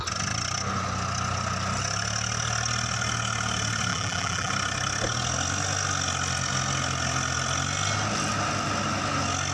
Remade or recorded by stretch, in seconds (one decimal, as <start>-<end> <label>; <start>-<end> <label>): 0.0-3.9 recorded; 3.9-4.5 remade; 4.5-9.5 recorded